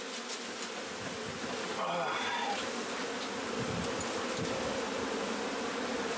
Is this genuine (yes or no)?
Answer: yes